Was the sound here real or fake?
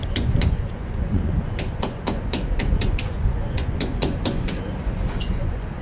fake